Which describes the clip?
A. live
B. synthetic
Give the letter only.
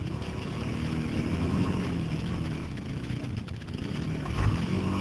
B